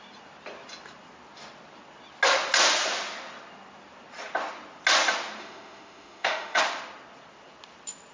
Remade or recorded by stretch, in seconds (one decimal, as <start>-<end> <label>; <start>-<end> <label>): 0.0-5.4 recorded; 5.4-6.6 remade; 6.6-8.1 recorded